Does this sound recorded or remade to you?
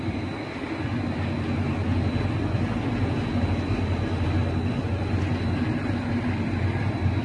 recorded